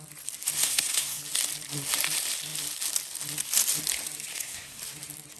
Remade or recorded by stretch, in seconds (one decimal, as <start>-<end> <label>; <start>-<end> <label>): 0.0-0.6 recorded; 0.6-1.2 remade; 1.2-4.3 recorded; 4.3-4.8 remade; 4.8-5.4 recorded

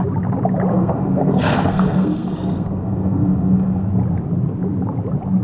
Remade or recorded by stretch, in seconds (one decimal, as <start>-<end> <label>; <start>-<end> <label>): 0.0-0.7 recorded; 0.7-3.9 remade; 3.9-5.4 recorded

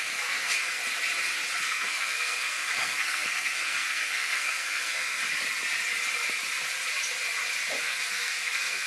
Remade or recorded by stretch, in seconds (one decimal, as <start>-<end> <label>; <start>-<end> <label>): 0.0-0.8 remade; 0.8-1.6 recorded; 1.6-5.2 remade; 5.2-7.8 recorded; 7.8-8.9 remade

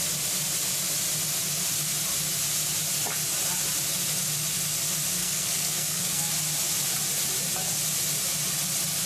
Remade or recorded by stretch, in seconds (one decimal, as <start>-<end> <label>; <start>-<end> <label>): 0.0-5.2 recorded; 5.2-6.3 remade; 6.3-9.1 recorded

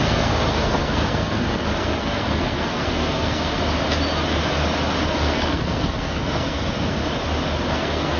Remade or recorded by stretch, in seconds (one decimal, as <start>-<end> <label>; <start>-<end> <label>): 0.0-3.6 remade; 3.6-5.1 recorded; 5.1-7.0 remade; 7.0-7.7 recorded; 7.7-8.2 remade

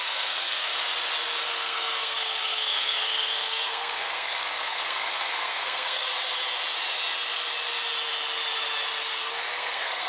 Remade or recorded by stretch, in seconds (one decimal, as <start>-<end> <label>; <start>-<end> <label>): 0.0-0.7 remade; 0.7-1.5 recorded; 1.5-6.1 remade; 6.1-9.3 recorded; 9.3-10.1 remade

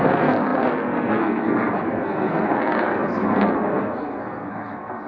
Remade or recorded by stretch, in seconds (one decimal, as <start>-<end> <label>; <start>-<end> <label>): 0.0-5.1 remade